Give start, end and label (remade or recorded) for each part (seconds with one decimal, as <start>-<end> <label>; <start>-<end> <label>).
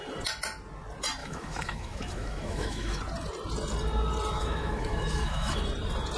0.0-1.2 recorded; 1.2-3.0 remade; 3.0-4.3 recorded; 4.3-5.6 remade; 5.6-6.2 recorded